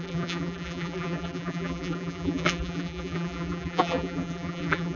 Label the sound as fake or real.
fake